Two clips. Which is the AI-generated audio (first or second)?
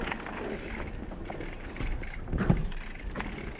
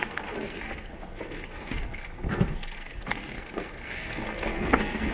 second